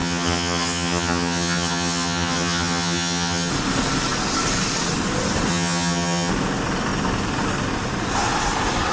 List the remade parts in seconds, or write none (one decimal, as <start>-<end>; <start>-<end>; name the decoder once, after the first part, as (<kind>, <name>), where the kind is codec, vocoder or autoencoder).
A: 0.0-3.5 (vocoder, HiFi-GAN); 5.5-6.3